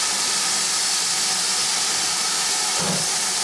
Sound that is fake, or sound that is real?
real